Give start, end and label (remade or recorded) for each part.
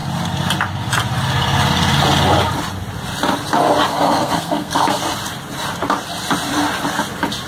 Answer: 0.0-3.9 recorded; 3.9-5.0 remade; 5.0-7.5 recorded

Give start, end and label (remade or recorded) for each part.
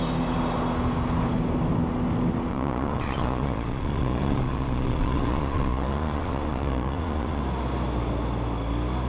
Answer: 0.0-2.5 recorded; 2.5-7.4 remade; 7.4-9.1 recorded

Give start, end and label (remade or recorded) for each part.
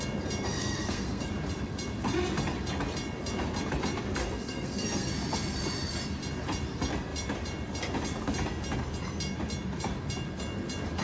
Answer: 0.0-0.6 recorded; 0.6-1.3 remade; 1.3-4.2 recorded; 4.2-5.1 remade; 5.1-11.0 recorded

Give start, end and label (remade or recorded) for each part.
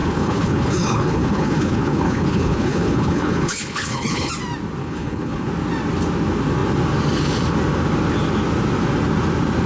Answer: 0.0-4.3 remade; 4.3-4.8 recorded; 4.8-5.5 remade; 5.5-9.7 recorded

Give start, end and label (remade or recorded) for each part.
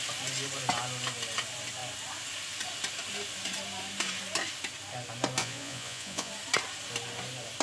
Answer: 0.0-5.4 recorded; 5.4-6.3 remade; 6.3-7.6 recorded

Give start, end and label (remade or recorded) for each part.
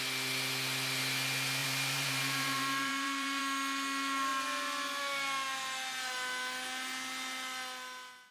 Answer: 0.0-1.6 recorded; 1.6-3.4 remade; 3.4-8.3 recorded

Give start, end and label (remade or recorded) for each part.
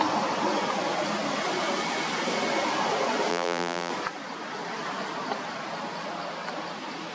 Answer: 0.0-3.3 recorded; 3.3-3.9 remade; 3.9-7.1 recorded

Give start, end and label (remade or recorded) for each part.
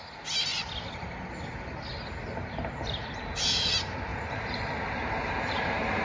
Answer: 0.0-1.9 recorded; 1.9-2.6 remade; 2.6-4.1 recorded; 4.1-6.0 remade